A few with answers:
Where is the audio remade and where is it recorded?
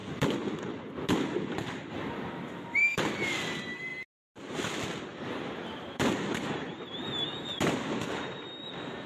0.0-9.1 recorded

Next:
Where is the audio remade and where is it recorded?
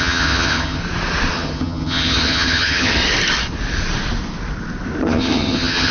0.0-0.8 remade; 0.8-1.3 recorded; 1.3-3.0 remade; 3.0-5.0 recorded; 5.0-5.9 remade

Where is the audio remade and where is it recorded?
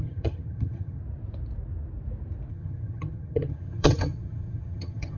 0.0-1.0 remade; 1.0-2.5 recorded; 2.5-5.2 remade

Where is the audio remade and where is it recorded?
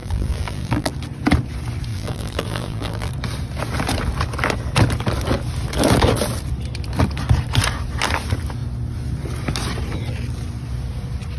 0.0-0.9 remade; 0.9-1.9 recorded; 1.9-3.1 remade; 3.1-11.4 recorded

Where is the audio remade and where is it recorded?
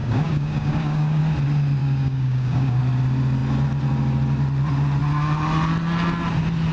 0.0-1.2 remade; 1.2-1.8 recorded; 1.8-2.8 remade; 2.8-6.7 recorded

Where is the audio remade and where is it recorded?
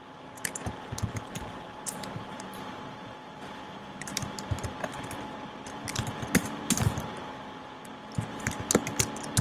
0.0-1.7 recorded; 1.7-4.9 remade; 4.9-9.4 recorded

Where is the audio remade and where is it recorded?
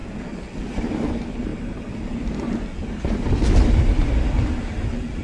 0.0-5.2 recorded